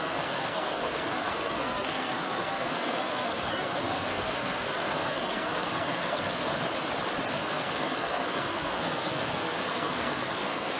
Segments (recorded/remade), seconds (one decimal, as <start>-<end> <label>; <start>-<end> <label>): 0.0-6.5 remade; 6.5-7.3 recorded; 7.3-10.8 remade